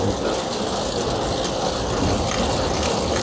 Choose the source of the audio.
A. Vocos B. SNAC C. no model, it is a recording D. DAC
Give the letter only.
C